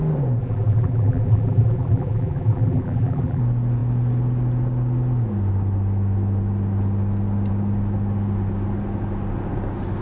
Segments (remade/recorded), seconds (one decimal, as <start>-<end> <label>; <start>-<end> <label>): 0.0-0.4 recorded; 0.4-3.4 remade; 3.4-10.0 recorded